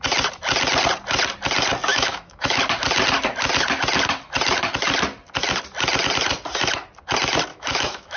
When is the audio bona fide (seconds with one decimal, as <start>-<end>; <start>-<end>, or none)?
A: 0.0-1.9; 2.6-7.5